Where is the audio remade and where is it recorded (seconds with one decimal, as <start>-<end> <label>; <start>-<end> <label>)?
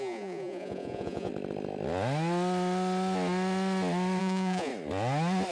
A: 0.0-1.3 remade; 1.3-4.2 recorded; 4.2-4.7 remade; 4.7-5.5 recorded